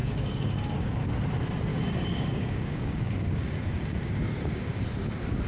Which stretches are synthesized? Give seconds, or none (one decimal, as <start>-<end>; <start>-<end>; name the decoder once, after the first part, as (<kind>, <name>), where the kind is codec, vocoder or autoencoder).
0.0-1.1 (codec, DAC); 1.7-4.8